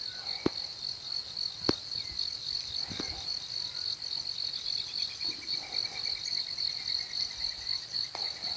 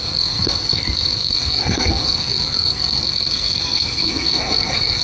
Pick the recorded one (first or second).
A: first